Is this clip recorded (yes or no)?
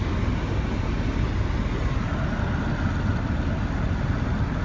yes